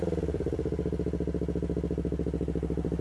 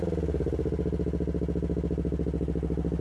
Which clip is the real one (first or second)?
second